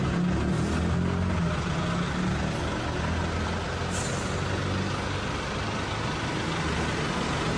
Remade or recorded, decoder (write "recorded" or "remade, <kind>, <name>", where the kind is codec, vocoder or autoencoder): recorded